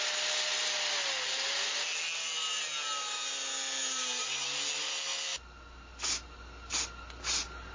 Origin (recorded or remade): recorded